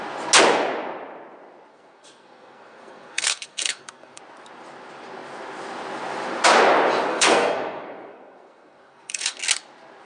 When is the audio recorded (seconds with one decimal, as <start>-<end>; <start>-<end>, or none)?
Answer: 0.0-1.7; 4.2-7.1; 9.4-10.1